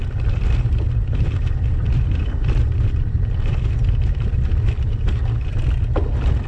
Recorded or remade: recorded